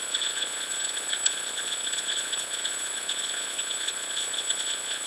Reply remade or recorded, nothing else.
remade